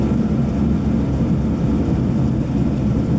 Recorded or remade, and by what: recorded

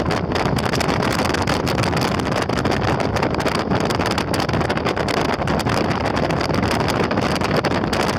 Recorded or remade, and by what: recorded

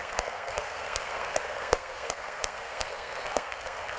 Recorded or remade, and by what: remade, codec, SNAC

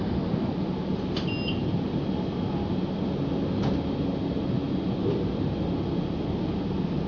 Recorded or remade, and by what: recorded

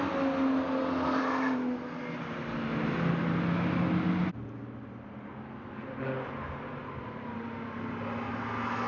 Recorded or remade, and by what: recorded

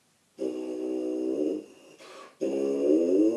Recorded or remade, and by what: recorded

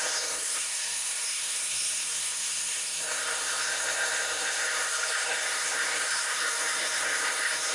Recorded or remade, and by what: remade, codec, SNAC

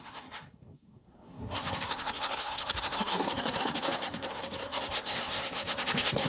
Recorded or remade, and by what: remade, codec, SNAC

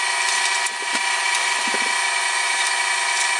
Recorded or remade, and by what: recorded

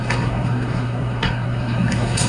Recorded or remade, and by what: remade, codec, SNAC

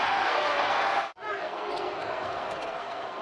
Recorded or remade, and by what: remade, codec, SNAC